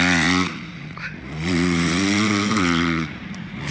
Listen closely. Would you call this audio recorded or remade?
remade